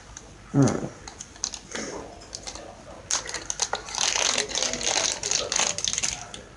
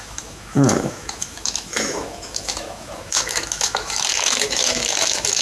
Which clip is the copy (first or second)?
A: second